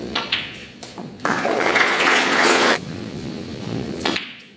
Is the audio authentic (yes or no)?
no